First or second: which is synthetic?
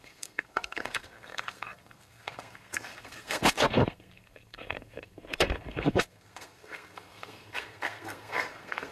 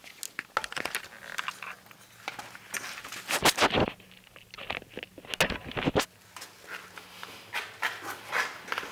first